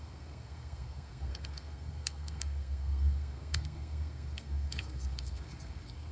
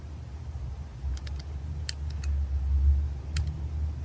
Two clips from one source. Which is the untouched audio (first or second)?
second